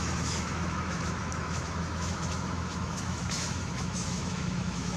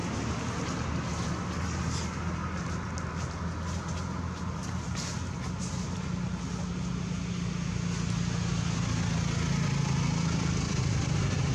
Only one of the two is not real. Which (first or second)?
first